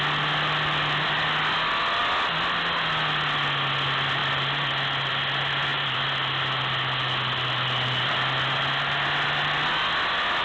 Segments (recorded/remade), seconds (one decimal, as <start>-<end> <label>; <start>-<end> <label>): 0.0-10.4 recorded